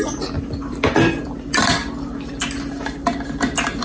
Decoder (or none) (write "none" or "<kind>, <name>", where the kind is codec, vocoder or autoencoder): none